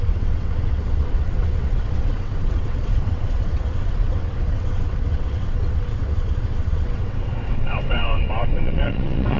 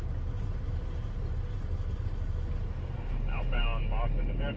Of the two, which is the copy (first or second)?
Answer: first